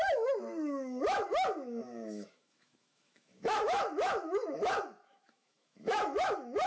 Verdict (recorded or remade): remade